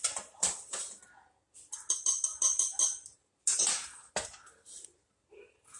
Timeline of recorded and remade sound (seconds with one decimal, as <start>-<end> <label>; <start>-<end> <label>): 0.0-5.8 recorded